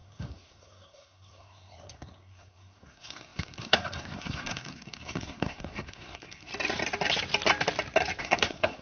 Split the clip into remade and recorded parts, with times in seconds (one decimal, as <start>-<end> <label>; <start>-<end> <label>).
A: 0.0-6.5 remade; 6.5-8.2 recorded; 8.2-8.8 remade